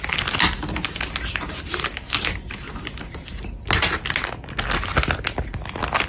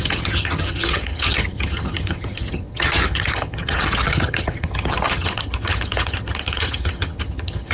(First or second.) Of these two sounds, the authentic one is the first